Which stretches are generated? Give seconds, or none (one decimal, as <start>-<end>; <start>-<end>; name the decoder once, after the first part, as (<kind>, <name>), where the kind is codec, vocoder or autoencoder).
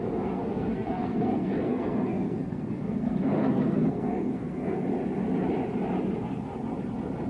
0.0-4.9 (codec, SNAC)